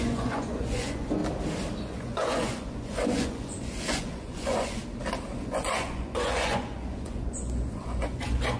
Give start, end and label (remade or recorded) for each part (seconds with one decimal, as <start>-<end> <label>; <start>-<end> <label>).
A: 0.0-1.2 remade; 1.2-1.9 recorded; 1.9-4.8 remade; 4.8-5.4 recorded; 5.4-8.6 remade